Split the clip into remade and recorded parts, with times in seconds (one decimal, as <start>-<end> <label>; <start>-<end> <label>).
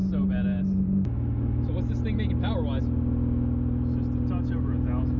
0.0-5.2 recorded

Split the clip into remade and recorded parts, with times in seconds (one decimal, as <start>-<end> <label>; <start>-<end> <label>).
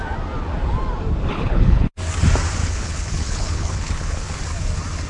0.0-1.3 recorded; 1.3-1.9 remade; 1.9-2.6 recorded; 2.6-4.4 remade; 4.4-5.1 recorded